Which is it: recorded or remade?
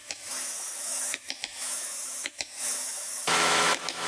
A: remade